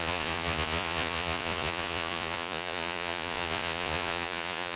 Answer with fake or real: fake